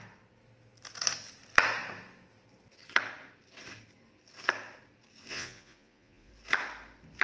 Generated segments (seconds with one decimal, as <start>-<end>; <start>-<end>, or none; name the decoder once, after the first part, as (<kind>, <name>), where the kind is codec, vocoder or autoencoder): 5.3-6.3 (vocoder, Vocos)